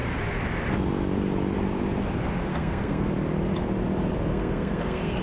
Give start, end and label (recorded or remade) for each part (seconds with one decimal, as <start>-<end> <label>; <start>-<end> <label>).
0.0-2.5 recorded; 2.5-3.1 remade; 3.1-4.3 recorded; 4.3-5.2 remade